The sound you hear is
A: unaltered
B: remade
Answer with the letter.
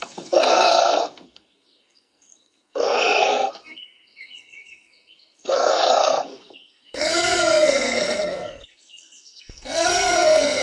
B